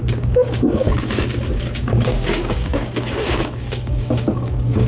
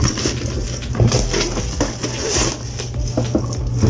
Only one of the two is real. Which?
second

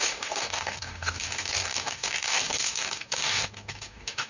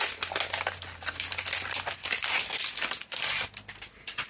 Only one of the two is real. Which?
second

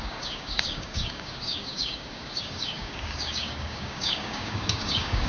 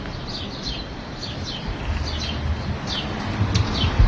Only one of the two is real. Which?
second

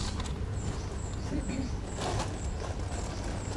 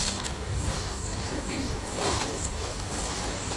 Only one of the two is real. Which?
first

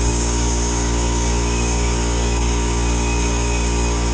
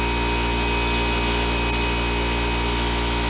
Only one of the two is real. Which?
second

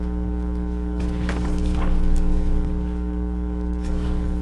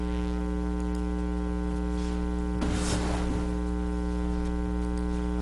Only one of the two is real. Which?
second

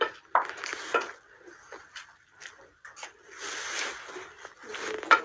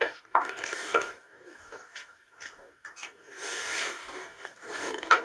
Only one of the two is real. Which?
first